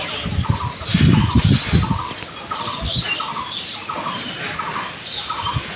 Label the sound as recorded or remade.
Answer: recorded